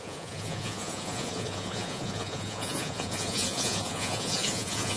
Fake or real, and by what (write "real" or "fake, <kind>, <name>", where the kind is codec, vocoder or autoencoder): fake, vocoder, Vocos